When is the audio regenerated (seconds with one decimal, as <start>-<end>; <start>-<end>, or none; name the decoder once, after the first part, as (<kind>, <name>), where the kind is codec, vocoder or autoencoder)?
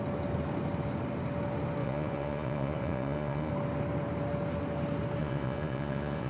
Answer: 1.8-3.5 (vocoder, Vocos); 5.2-6.3